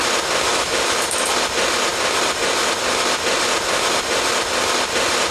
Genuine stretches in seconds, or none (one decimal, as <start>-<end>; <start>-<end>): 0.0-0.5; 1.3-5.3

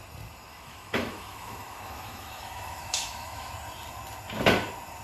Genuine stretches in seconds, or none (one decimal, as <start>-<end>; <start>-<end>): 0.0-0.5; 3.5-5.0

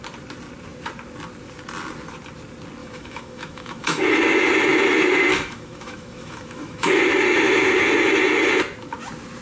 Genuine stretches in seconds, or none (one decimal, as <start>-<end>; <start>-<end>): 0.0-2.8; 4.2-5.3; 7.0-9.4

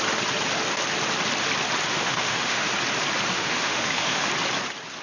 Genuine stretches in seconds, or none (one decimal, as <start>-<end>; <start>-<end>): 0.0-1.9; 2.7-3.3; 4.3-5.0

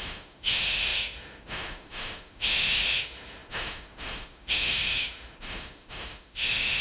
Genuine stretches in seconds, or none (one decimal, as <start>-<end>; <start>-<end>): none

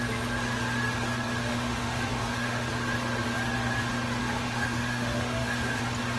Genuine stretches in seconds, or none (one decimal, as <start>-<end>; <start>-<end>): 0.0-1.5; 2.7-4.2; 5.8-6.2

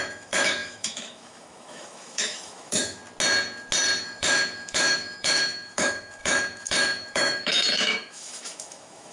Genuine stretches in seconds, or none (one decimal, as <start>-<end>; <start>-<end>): 3.0-4.0